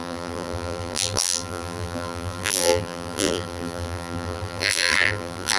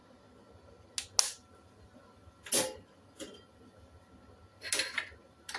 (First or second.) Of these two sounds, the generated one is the first